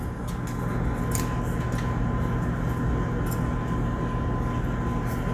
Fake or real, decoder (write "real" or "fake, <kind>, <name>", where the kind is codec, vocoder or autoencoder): real